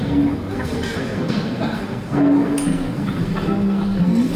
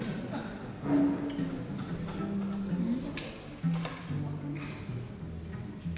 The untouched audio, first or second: second